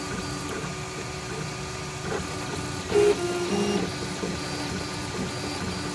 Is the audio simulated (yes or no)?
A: no